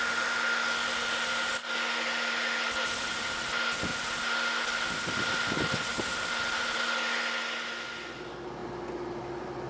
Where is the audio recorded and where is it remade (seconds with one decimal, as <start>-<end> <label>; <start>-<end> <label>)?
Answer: 0.0-9.7 recorded